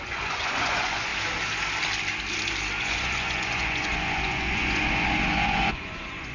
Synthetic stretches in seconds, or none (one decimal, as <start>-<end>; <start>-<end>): 0.0-1.1; 2.8-6.3